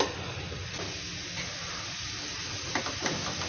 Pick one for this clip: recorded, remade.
recorded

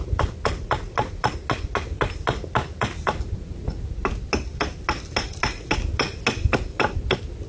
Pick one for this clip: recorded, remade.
recorded